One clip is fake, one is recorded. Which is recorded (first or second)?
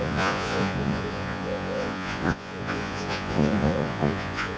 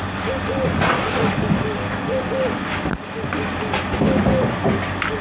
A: second